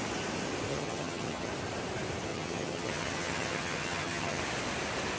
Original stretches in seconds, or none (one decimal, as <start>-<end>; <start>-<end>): 0.0-0.7; 1.5-2.3; 4.4-5.2